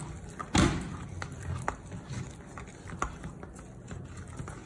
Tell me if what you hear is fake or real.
real